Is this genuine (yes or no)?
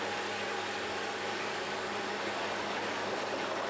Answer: no